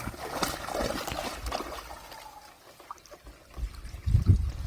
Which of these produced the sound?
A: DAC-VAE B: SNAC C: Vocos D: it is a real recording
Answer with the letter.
D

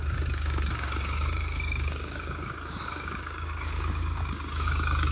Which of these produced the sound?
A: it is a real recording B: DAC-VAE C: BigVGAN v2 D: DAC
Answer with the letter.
D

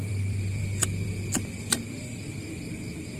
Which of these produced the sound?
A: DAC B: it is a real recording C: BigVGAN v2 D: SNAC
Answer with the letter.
C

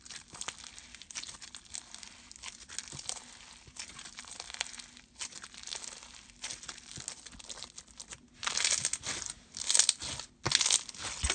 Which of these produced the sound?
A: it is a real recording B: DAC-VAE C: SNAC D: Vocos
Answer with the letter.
A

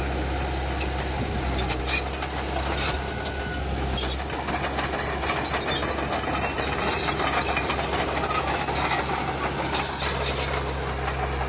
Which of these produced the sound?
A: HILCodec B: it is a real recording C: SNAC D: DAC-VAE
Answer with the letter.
B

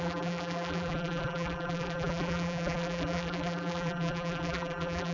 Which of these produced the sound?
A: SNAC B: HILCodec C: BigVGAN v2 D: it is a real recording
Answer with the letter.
C